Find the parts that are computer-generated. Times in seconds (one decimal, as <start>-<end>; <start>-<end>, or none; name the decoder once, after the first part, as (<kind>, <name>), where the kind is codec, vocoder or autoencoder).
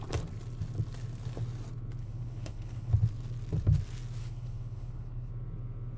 2.0-2.9 (codec, HILCodec); 4.2-5.3